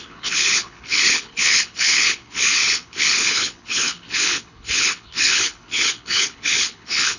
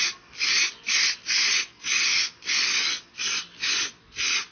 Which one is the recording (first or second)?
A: second